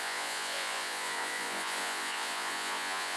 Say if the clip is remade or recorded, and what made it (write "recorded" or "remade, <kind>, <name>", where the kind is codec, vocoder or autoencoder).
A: remade, vocoder, Vocos